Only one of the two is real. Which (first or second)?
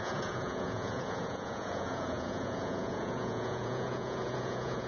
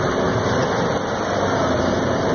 second